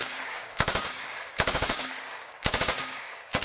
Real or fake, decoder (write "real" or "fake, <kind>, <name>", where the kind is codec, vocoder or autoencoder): fake, codec, DAC